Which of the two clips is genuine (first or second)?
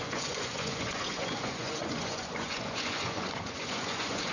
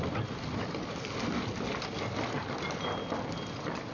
second